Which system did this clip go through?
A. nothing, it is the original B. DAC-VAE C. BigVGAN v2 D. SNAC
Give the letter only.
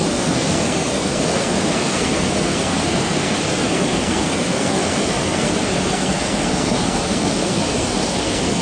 D